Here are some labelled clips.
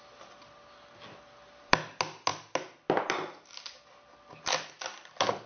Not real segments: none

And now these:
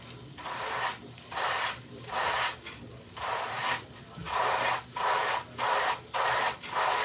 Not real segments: 1.0-3.7 (vocoder, BigVGAN v2); 4.2-5.8

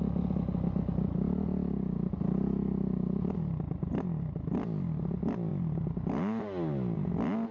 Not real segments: none

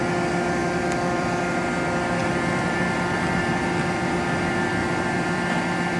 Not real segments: 0.6-1.5 (vocoder, BigVGAN v2); 2.2-3.4; 4.8-5.5